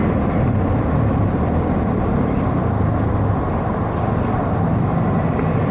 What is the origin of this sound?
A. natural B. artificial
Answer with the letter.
A